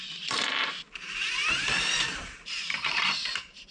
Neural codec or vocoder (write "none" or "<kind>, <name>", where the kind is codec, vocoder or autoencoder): vocoder, BigVGAN v2